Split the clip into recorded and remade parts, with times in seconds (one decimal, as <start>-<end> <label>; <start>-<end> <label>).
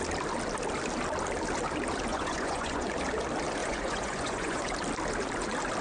0.0-2.1 recorded; 2.1-2.9 remade; 2.9-3.6 recorded; 3.6-4.7 remade; 4.7-5.8 recorded